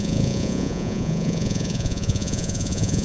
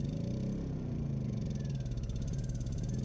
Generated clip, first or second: first